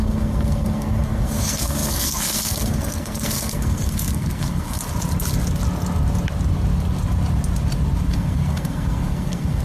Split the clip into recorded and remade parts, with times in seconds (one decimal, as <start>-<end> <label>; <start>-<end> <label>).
0.0-4.8 remade; 4.8-8.1 recorded; 8.1-9.6 remade